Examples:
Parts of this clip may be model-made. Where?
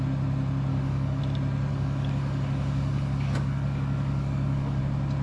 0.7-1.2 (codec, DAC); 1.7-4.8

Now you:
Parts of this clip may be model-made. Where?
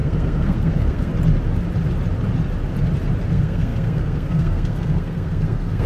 0.0-1.1 (codec, SNAC); 3.3-5.9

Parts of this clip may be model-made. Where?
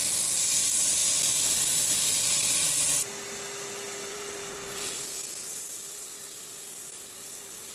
none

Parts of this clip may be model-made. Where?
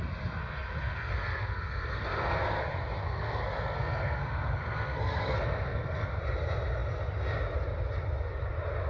0.4-2.6 (codec, SNAC); 3.0-6.2